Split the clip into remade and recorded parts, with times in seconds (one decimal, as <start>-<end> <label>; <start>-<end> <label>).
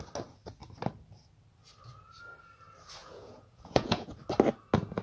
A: 0.0-3.0 recorded; 3.0-4.1 remade; 4.1-5.0 recorded